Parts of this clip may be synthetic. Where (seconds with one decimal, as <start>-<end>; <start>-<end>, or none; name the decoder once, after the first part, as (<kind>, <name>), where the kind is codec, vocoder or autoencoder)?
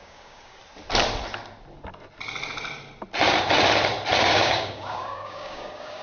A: 0.0-0.6 (codec, DAC); 4.2-6.0